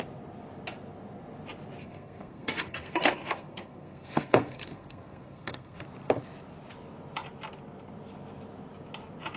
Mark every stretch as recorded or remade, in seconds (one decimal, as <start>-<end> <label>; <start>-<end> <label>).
0.0-1.8 recorded; 1.8-5.8 remade; 5.8-9.4 recorded